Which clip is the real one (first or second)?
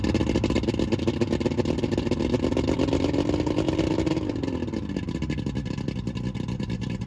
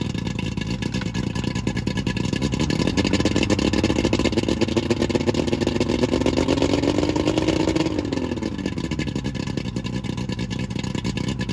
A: second